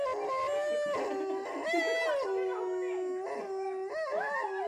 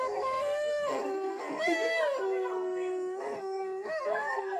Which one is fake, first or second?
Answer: second